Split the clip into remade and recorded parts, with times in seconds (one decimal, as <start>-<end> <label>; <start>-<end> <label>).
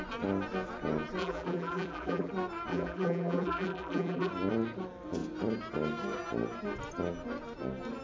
0.0-1.2 recorded; 1.2-2.3 remade; 2.3-2.7 recorded; 2.7-4.3 remade; 4.3-8.0 recorded